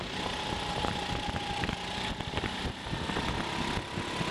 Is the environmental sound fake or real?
real